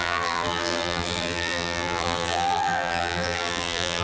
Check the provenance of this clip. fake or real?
fake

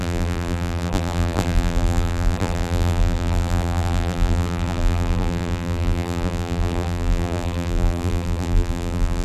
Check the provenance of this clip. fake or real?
fake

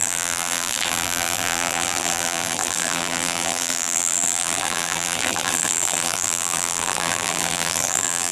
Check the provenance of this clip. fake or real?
fake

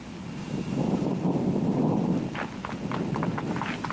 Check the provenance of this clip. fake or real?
real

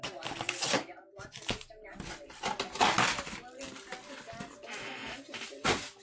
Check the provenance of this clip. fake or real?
real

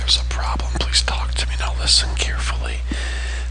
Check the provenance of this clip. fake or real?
real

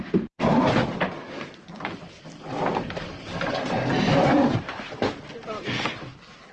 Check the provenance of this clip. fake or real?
fake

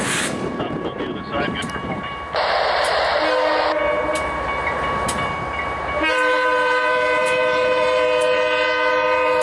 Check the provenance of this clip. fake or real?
fake